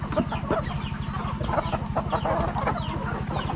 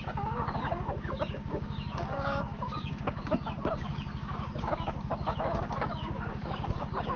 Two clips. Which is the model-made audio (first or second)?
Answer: second